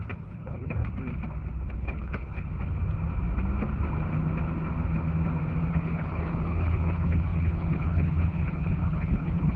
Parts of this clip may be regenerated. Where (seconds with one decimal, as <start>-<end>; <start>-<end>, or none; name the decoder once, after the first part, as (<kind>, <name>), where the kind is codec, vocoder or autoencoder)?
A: 0.0-0.8 (codec, HILCodec); 1.7-2.5; 5.7-9.6